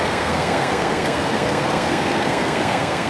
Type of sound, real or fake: fake